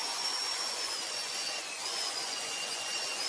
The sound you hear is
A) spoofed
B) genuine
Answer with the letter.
A